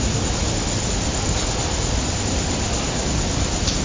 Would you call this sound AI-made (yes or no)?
no